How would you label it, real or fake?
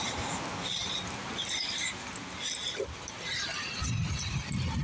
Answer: real